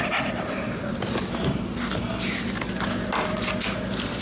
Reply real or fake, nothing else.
fake